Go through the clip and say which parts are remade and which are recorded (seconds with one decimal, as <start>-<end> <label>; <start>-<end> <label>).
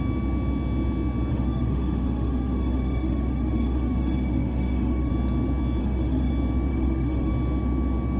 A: 0.0-1.3 recorded; 1.3-5.1 remade; 5.1-5.8 recorded; 5.8-6.3 remade; 6.3-6.7 recorded; 6.7-7.3 remade; 7.3-8.2 recorded